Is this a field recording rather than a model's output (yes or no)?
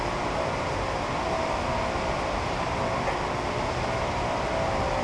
yes